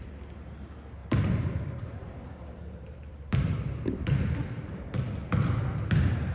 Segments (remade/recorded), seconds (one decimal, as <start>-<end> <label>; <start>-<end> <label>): 0.0-1.0 recorded; 1.0-4.8 remade; 4.8-6.3 recorded